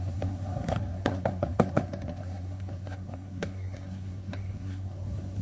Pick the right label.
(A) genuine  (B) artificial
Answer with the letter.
B